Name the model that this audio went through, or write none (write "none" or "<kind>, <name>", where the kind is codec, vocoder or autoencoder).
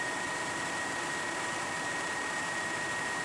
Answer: vocoder, BigVGAN v2